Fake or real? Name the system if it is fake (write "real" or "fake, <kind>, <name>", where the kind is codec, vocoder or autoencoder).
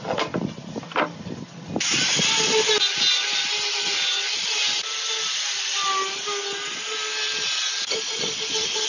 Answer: real